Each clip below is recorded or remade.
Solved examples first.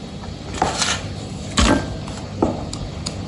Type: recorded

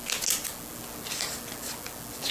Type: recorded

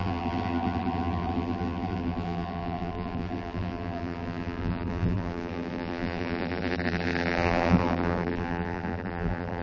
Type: remade